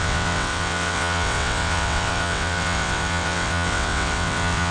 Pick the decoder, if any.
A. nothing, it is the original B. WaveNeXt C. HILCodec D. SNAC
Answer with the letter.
B